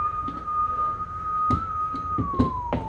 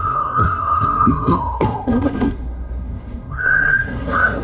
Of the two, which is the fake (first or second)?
second